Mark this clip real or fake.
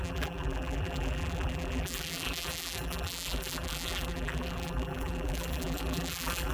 fake